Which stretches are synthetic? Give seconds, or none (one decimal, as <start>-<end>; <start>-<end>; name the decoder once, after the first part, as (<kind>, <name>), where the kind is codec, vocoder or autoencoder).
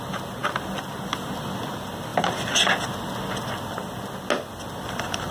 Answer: none